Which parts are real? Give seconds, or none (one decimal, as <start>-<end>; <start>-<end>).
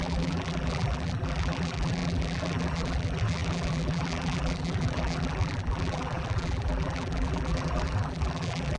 none